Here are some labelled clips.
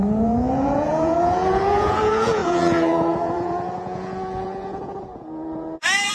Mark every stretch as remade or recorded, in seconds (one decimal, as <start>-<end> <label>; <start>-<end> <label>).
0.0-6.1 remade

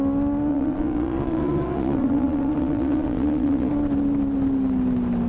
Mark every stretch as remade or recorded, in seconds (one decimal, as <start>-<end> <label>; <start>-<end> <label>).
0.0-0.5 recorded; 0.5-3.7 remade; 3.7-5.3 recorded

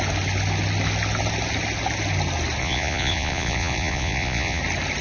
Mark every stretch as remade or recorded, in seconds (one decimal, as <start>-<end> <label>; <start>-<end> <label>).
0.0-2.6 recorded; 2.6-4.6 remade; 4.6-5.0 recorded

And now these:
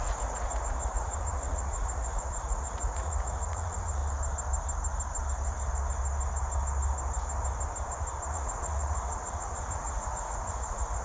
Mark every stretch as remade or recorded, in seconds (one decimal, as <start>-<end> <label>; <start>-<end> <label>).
0.0-4.0 remade; 4.0-8.3 recorded; 8.3-11.0 remade

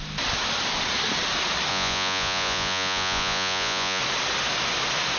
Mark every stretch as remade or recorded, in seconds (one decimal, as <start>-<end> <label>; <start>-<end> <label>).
0.0-1.7 recorded; 1.7-4.0 remade; 4.0-5.2 recorded

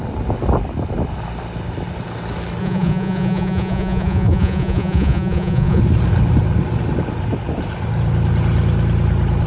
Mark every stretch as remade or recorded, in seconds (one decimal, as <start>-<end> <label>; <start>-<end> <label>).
0.0-2.6 recorded; 2.6-5.8 remade; 5.8-9.5 recorded

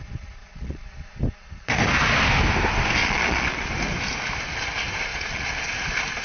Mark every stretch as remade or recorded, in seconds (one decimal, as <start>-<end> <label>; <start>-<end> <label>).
0.0-0.4 recorded; 0.4-1.2 remade; 1.2-3.0 recorded; 3.0-3.7 remade; 3.7-5.1 recorded; 5.1-5.7 remade; 5.7-6.2 recorded

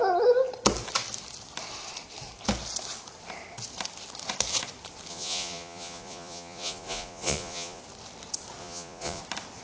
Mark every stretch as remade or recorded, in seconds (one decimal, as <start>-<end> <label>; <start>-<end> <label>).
0.0-5.1 recorded; 5.1-7.8 remade; 7.8-8.6 recorded; 8.6-9.2 remade; 9.2-9.6 recorded